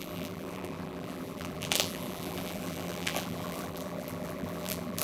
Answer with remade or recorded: remade